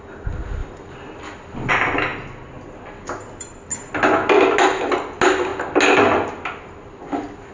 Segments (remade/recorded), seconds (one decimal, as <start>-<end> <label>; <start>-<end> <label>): 0.0-7.5 recorded

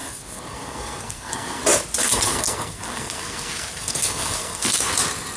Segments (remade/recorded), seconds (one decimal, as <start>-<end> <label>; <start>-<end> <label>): 0.0-1.6 remade; 1.6-2.0 recorded; 2.0-4.9 remade; 4.9-5.4 recorded

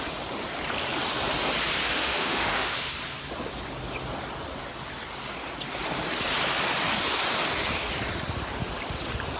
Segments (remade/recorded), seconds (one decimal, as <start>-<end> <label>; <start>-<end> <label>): 0.0-1.8 recorded; 1.8-2.9 remade; 2.9-9.4 recorded

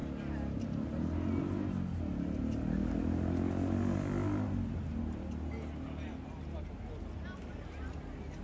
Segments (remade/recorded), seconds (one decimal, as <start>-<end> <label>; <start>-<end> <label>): 0.0-8.4 recorded

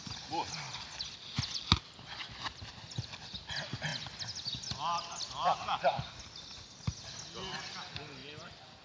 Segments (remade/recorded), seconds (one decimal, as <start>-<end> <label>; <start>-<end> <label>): 0.0-8.8 recorded

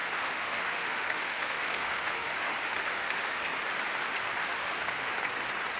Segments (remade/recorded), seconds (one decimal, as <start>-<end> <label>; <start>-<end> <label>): 0.0-3.5 remade; 3.5-4.4 recorded; 4.4-5.1 remade; 5.1-5.8 recorded